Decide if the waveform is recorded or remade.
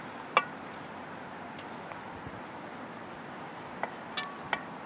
recorded